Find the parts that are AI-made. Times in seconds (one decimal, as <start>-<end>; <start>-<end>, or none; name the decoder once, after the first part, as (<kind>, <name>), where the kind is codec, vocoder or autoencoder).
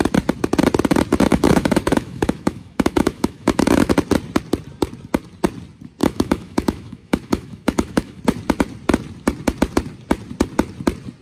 1.3-3.9 (autoencoder, DAC-VAE); 6.0-8.2